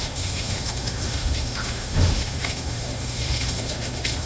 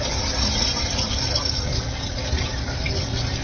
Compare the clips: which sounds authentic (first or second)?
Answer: second